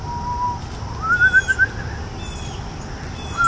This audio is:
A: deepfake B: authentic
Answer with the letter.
B